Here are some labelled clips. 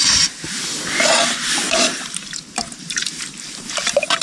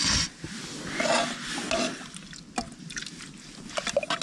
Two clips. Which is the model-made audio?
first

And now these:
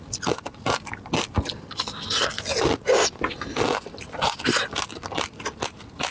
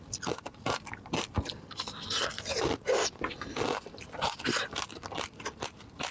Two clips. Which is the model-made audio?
second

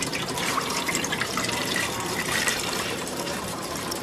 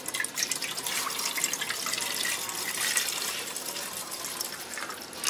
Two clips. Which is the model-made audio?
first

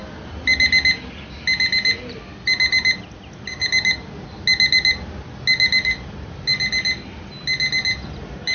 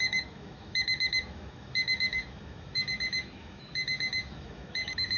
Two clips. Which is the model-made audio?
second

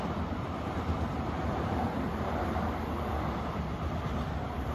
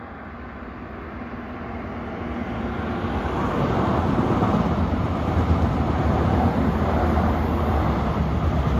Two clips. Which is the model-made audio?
first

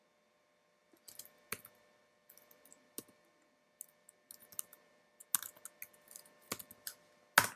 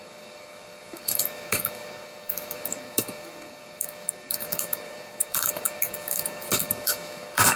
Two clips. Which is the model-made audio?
second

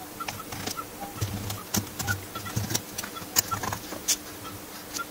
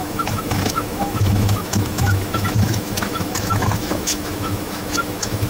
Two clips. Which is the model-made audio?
second